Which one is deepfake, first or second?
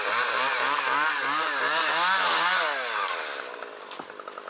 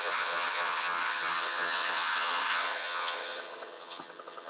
second